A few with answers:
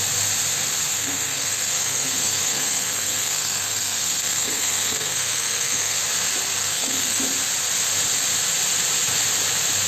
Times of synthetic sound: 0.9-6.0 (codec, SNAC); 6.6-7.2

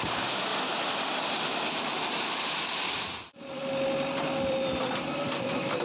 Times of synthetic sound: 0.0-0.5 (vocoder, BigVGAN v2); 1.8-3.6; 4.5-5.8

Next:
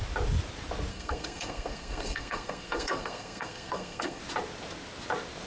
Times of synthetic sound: 0.9-4.2 (codec, SNAC)

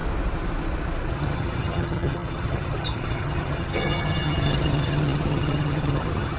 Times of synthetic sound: 1.1-6.4 (vocoder, HiFi-GAN)